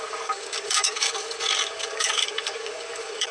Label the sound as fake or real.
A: fake